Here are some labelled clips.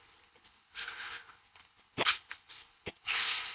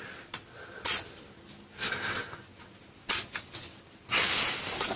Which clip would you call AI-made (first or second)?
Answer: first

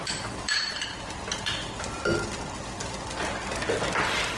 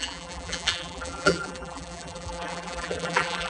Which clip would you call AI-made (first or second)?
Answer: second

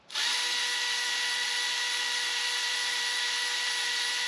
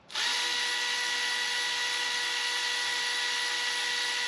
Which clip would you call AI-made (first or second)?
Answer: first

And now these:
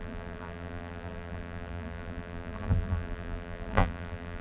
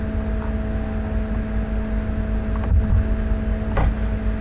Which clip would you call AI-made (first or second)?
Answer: first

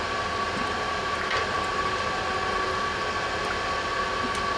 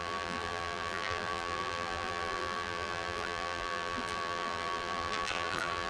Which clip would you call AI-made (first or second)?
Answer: second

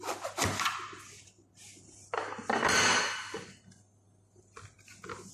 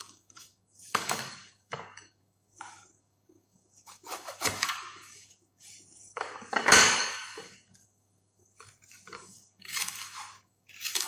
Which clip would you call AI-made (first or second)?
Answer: second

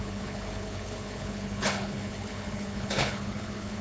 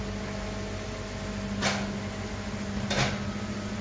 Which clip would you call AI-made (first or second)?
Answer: first